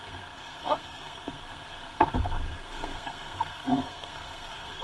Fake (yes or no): yes